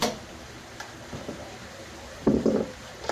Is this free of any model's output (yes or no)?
yes